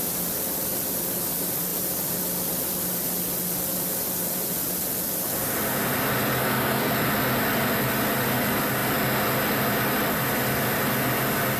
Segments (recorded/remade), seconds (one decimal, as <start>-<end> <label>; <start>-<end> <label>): 0.0-6.4 recorded; 6.4-6.9 remade; 6.9-11.6 recorded